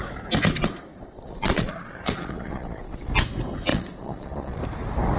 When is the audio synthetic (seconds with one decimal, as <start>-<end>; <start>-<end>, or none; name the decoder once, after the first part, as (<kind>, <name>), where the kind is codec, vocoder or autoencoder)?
0.9-3.1 (vocoder, Vocos); 3.7-4.6